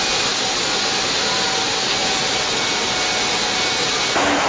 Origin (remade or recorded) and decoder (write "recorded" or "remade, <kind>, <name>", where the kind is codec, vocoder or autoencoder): recorded